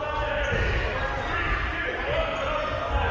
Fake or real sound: real